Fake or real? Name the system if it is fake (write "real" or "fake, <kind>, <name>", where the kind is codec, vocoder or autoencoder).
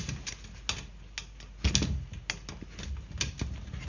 real